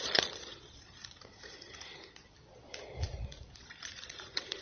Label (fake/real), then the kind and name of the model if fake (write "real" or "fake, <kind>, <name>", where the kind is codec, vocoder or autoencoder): fake, vocoder, Vocos